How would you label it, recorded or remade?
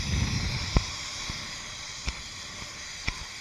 remade